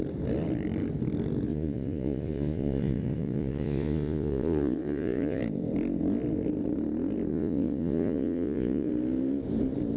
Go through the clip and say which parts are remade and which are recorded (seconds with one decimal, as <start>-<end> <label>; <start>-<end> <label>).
0.0-1.5 recorded; 1.5-5.4 remade; 5.4-7.3 recorded; 7.3-8.9 remade; 8.9-10.0 recorded

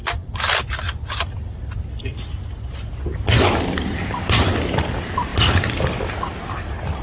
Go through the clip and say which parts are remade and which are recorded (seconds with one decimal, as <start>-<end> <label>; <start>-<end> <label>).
0.0-7.0 recorded